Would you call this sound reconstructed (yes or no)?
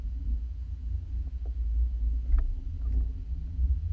no